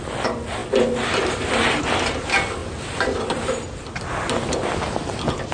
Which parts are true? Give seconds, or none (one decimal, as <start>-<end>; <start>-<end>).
0.0-5.5